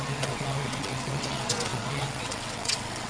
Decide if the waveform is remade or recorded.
remade